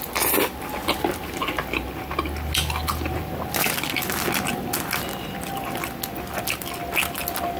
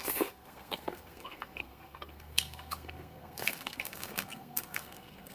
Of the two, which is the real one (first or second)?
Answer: first